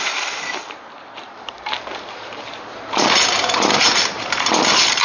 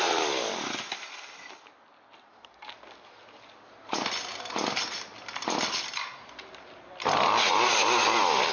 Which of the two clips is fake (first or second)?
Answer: first